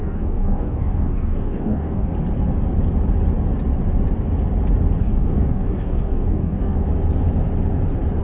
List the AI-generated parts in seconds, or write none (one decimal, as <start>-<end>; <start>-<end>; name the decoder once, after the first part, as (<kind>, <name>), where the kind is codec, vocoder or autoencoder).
0.0-2.1 (codec, DAC); 5.0-6.9